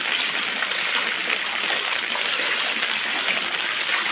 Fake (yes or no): no